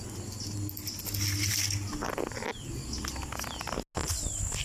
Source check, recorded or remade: recorded